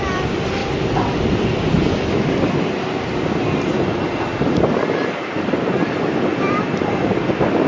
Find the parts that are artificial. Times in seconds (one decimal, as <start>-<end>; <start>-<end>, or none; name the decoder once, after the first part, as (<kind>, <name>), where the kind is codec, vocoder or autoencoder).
0.0-7.7 (vocoder, BigVGAN v2)